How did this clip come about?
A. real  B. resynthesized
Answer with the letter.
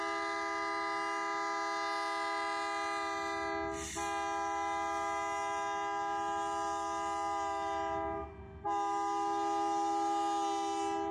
A